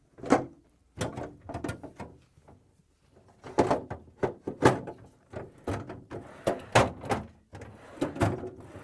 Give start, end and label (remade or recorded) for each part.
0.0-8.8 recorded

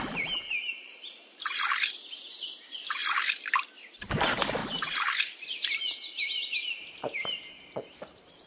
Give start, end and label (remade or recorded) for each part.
0.0-3.0 remade; 3.0-4.0 recorded; 4.0-4.6 remade; 4.6-7.5 recorded; 7.5-8.5 remade